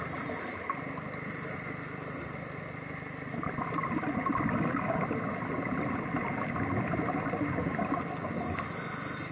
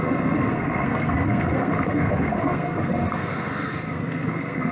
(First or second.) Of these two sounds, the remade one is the second